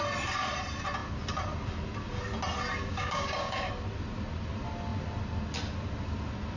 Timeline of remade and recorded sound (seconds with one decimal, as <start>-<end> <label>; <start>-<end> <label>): 0.0-2.9 recorded; 2.9-3.7 remade; 3.7-6.6 recorded